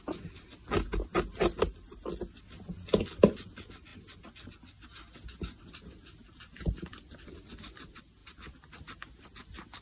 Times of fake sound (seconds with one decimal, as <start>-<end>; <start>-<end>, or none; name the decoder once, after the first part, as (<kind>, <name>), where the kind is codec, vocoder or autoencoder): none